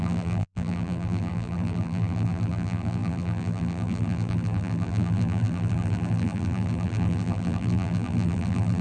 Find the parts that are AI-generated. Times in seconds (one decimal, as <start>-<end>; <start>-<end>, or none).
0.0-8.8